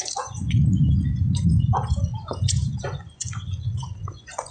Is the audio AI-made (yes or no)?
yes